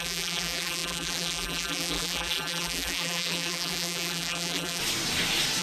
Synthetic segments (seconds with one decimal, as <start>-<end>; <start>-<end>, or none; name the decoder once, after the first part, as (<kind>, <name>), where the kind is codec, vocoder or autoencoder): 0.0-4.8 (vocoder, BigVGAN v2)